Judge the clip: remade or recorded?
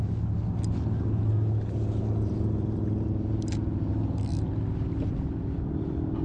recorded